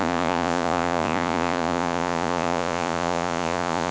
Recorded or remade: remade